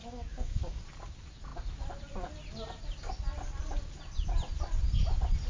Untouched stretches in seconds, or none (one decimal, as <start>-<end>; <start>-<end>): 0.8-5.5